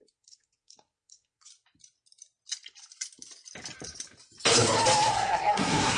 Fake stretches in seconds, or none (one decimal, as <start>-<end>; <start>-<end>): 0.0-1.5; 5.1-6.0